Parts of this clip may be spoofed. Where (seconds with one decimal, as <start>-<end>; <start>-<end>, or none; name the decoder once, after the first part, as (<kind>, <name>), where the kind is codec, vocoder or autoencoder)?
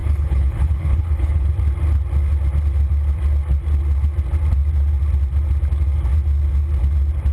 0.0-1.5 (codec, HILCodec)